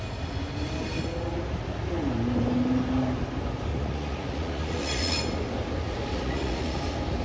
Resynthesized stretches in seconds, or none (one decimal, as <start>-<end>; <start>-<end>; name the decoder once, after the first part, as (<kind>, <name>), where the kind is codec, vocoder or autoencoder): 3.7-5.2 (vocoder, Vocos); 6.1-6.8

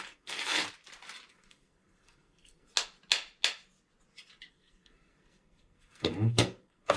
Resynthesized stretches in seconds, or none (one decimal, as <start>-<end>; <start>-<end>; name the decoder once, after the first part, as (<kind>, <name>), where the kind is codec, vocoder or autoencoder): 0.0-0.6 (codec, SNAC); 1.3-2.7; 4.5-7.0

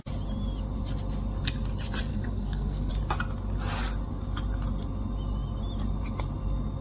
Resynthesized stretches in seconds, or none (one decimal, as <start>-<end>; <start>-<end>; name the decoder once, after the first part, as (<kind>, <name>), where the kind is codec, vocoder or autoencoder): 2.1-2.9 (codec, SNAC)

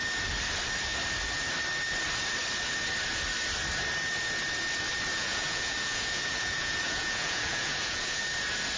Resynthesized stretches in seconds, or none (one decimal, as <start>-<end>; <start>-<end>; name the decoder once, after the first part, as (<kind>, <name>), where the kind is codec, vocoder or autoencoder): 5.1-8.2 (vocoder, Vocos)

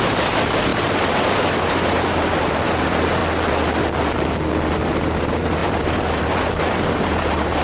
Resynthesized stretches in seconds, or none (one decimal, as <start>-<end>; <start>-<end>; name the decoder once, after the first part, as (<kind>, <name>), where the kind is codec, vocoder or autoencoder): 0.0-3.2 (vocoder, BigVGAN v2); 4.7-7.6

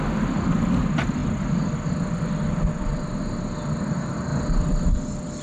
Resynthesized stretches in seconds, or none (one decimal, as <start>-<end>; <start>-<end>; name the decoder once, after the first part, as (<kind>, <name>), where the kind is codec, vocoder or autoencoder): none